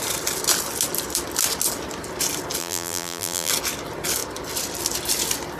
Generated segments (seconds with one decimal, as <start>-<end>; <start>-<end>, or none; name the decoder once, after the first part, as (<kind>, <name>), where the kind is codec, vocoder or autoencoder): 2.6-3.5 (vocoder, BigVGAN v2)